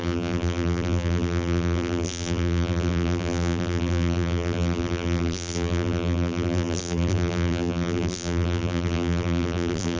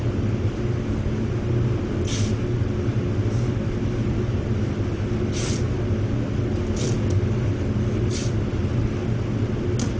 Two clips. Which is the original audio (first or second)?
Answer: second